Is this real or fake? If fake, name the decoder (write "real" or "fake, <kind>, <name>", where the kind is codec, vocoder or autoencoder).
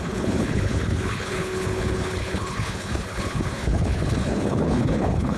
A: fake, codec, HILCodec